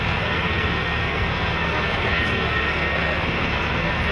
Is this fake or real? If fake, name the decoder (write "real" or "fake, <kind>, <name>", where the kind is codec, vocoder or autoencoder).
fake, codec, SNAC